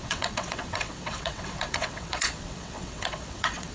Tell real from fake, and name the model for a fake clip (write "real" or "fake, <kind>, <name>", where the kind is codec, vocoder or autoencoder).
fake, vocoder, WaveNeXt